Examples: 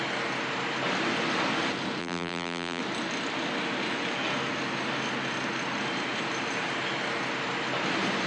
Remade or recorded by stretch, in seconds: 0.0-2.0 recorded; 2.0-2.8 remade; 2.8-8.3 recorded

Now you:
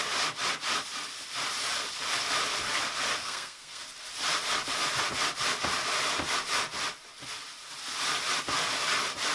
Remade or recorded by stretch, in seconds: 0.0-3.2 recorded; 3.2-3.8 remade; 3.8-9.3 recorded

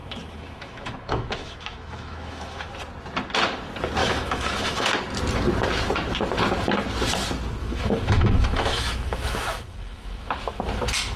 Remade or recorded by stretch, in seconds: 0.0-2.7 remade; 2.7-4.0 recorded; 4.0-4.9 remade; 4.9-7.6 recorded; 7.6-10.3 remade; 10.3-11.2 recorded

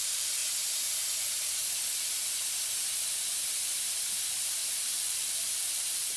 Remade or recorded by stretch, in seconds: 0.0-0.4 remade; 0.4-4.1 recorded; 4.1-6.2 remade